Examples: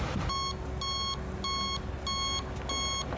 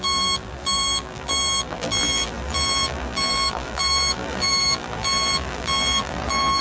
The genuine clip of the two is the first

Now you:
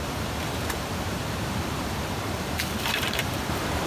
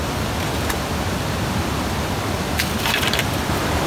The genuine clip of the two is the second